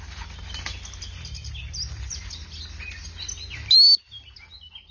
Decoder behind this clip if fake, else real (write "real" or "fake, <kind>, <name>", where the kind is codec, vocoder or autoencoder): real